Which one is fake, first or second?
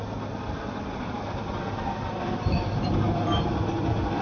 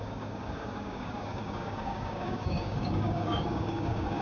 second